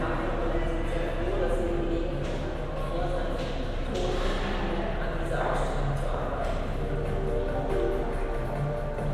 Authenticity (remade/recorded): recorded